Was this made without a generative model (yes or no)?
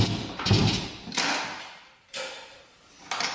yes